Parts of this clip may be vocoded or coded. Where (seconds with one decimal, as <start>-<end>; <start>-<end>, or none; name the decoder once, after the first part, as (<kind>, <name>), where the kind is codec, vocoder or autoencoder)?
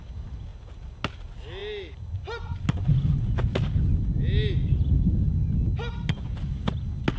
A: none